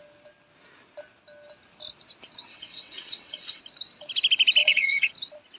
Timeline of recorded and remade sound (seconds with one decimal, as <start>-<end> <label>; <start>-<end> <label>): 0.0-2.5 recorded; 2.5-3.6 remade; 3.6-4.6 recorded; 4.6-5.1 remade; 5.1-5.6 recorded